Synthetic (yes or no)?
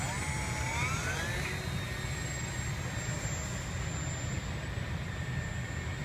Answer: no